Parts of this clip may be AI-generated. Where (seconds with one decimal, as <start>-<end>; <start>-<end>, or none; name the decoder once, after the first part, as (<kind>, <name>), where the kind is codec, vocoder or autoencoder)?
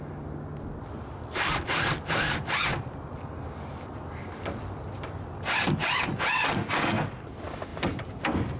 7.7-8.2 (vocoder, BigVGAN v2)